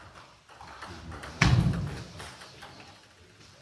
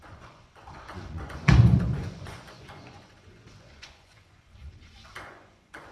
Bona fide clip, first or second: first